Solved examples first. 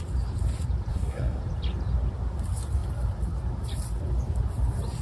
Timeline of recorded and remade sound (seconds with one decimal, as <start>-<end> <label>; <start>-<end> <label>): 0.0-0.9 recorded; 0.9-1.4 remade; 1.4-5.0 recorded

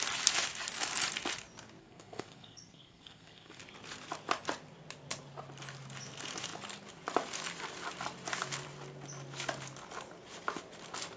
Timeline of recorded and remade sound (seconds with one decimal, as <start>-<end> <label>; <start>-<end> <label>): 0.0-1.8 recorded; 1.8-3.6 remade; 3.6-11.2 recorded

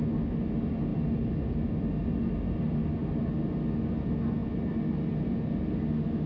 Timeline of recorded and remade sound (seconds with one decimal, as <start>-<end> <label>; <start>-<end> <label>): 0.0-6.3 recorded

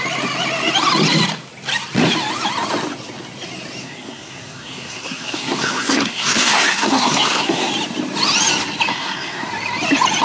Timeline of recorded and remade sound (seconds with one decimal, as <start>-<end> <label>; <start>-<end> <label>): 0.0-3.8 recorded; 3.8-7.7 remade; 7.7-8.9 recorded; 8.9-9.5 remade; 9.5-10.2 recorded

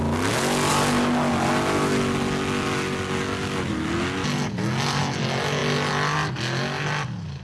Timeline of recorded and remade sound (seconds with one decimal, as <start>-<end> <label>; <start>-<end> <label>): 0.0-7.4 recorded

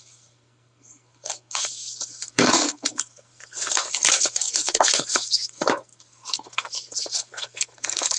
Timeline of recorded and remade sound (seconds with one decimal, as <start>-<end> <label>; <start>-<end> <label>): 0.0-8.2 remade

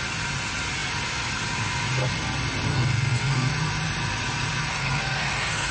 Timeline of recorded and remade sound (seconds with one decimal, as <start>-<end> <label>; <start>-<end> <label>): 0.0-2.7 recorded; 2.7-3.5 remade; 3.5-4.7 recorded; 4.7-5.7 remade